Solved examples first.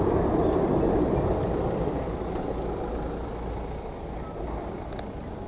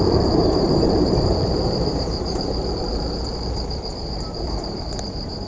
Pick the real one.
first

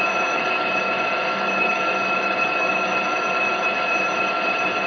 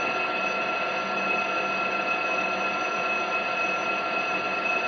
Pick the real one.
second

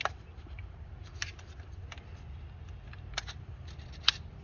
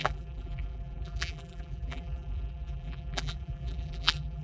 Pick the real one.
first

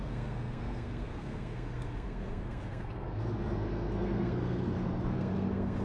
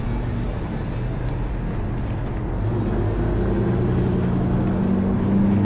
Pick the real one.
second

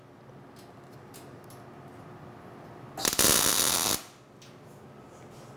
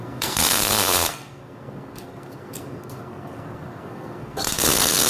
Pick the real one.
first